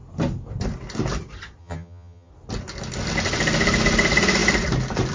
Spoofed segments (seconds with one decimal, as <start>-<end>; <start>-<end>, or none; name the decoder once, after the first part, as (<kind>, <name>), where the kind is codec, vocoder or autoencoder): 1.6-2.3 (vocoder, HiFi-GAN)